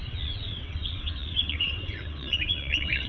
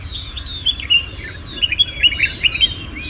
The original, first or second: second